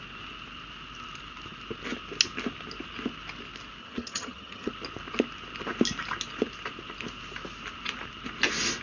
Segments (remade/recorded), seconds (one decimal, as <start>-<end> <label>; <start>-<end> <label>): 0.0-3.8 recorded; 3.8-4.7 remade; 4.7-8.8 recorded